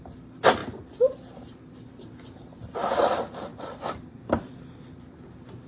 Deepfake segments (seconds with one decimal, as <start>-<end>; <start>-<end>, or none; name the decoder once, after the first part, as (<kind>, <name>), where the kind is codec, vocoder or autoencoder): 0.0-5.7 (vocoder, BigVGAN v2)